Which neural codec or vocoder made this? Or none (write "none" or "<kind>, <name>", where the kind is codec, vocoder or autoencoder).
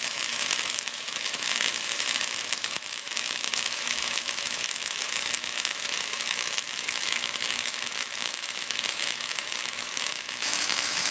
autoencoder, DAC-VAE